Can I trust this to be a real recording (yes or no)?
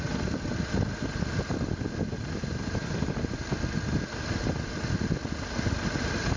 yes